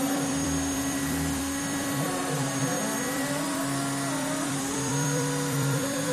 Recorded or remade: remade